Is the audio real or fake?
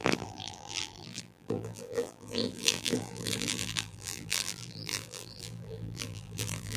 fake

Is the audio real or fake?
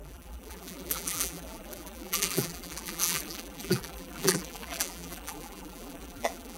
fake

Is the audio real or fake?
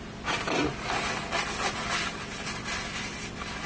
real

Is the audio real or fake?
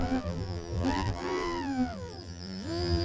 fake